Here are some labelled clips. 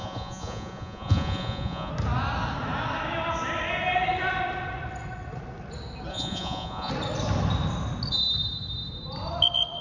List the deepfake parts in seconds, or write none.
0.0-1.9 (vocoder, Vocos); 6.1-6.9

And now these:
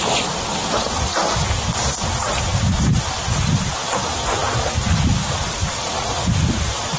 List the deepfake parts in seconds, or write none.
0.0-1.2 (vocoder, BigVGAN v2); 1.8-7.0